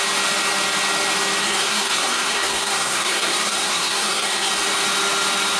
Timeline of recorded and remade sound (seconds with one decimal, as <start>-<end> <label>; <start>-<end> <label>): 0.0-1.4 recorded; 1.4-4.5 remade; 4.5-5.6 recorded